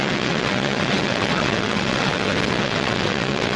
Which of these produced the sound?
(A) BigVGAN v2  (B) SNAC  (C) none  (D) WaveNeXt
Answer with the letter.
D